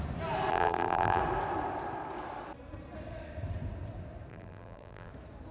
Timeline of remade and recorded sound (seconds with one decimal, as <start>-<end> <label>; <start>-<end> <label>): 0.0-0.5 recorded; 0.5-1.2 remade; 1.2-4.3 recorded; 4.3-5.1 remade; 5.1-5.5 recorded